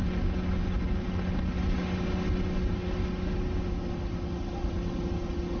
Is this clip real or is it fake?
real